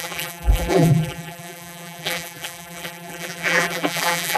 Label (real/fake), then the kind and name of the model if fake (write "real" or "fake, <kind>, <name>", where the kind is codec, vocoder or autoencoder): fake, vocoder, BigVGAN v2